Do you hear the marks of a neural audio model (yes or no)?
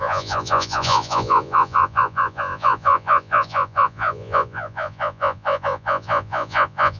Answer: yes